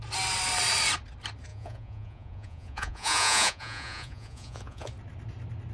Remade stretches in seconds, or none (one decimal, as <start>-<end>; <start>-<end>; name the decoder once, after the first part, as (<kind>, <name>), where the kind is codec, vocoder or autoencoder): 1.5-4.9 (vocoder, Vocos)

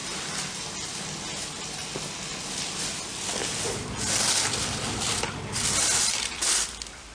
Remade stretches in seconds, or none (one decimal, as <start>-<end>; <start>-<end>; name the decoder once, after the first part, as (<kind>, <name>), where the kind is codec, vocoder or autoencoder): 0.0-0.6 (vocoder, BigVGAN v2)

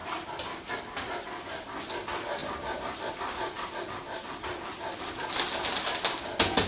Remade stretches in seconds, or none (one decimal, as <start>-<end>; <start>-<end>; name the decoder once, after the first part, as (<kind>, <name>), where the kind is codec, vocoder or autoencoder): 0.0-0.7 (vocoder, BigVGAN v2); 2.4-5.4

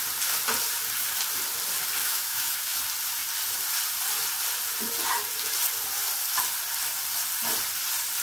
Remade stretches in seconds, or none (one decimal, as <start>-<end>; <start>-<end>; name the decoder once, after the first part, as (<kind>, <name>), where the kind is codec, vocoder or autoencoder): 2.0-2.8 (autoencoder, DAC-VAE)

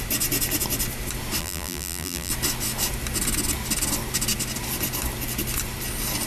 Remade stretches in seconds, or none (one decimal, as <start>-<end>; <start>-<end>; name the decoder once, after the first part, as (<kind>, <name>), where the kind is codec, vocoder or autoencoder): 1.4-2.3 (vocoder, BigVGAN v2)

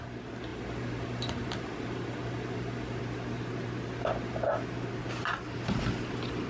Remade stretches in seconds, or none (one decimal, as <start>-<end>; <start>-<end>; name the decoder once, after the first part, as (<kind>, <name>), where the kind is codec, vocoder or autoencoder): 0.5-3.0 (vocoder, BigVGAN v2)

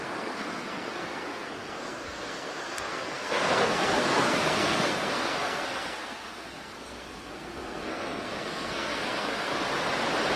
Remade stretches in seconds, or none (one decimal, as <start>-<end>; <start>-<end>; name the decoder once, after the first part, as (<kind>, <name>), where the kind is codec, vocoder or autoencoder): 0.0-9.5 (codec, SNAC)